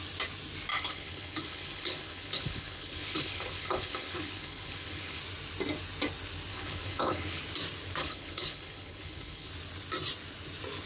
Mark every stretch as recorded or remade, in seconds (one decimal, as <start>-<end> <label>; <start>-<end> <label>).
0.0-0.7 recorded; 0.7-5.2 remade; 5.2-6.5 recorded; 6.5-7.4 remade; 7.4-8.0 recorded; 8.0-9.5 remade; 9.5-10.9 recorded